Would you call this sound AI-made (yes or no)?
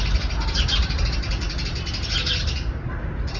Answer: no